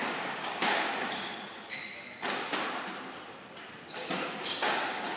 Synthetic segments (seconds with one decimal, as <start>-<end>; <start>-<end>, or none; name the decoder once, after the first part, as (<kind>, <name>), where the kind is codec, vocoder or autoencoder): 0.0-0.9 (codec, DAC); 4.0-5.2